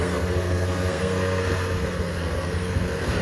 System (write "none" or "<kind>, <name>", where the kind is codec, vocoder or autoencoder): codec, SNAC